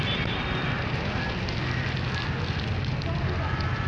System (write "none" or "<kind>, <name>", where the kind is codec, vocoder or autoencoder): none